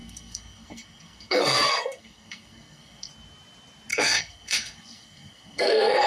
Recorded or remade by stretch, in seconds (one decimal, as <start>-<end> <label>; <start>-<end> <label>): 0.0-3.1 remade; 3.1-3.9 recorded; 3.9-6.1 remade